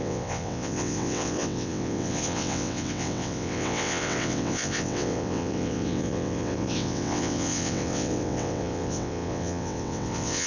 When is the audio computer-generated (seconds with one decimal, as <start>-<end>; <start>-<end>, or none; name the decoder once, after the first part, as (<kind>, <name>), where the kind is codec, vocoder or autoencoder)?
0.0-10.5 (vocoder, WaveNeXt)